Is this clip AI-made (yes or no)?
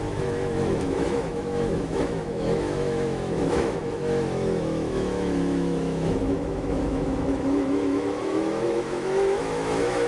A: yes